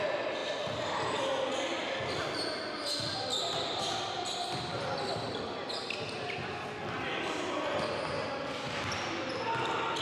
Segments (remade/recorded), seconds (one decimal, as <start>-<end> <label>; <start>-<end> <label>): 0.0-10.0 recorded